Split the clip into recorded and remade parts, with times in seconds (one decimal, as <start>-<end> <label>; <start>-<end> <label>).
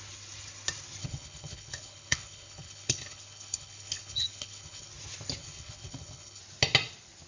0.0-1.0 recorded; 1.0-4.9 remade; 4.9-5.4 recorded; 5.4-6.4 remade; 6.4-7.3 recorded